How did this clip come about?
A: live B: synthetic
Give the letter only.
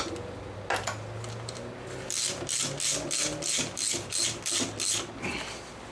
A